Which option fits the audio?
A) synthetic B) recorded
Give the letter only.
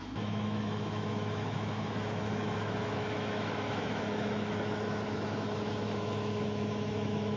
A